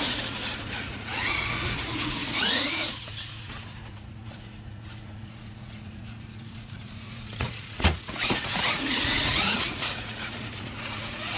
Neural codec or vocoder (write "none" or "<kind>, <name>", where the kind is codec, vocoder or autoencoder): vocoder, Vocos